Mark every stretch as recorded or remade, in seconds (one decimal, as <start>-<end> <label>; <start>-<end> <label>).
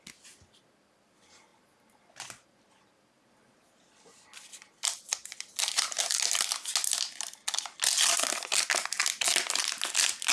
0.0-10.3 recorded